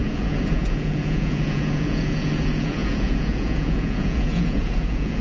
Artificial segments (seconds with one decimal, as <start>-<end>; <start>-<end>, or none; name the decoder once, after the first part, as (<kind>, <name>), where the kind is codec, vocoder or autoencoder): 0.0-5.2 (vocoder, Vocos)